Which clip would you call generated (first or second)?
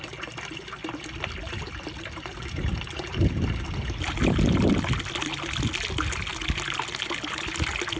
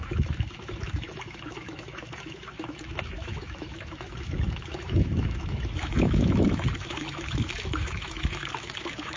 second